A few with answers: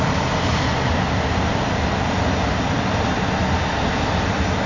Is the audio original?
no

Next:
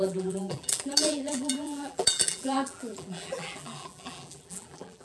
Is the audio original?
no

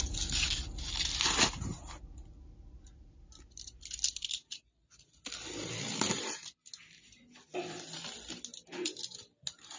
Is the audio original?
yes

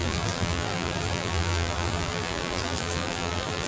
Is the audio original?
no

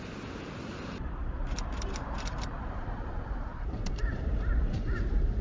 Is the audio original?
no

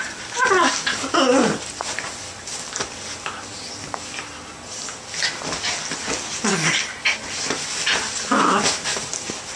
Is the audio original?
yes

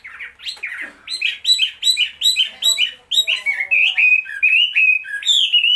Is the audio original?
yes